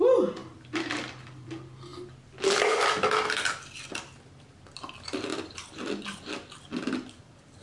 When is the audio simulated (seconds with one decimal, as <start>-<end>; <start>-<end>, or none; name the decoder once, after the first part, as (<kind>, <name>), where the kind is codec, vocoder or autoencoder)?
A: 0.4-1.5 (vocoder, BigVGAN v2); 5.3-5.9